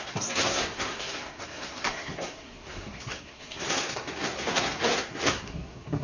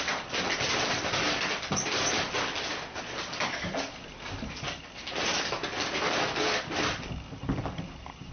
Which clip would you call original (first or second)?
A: second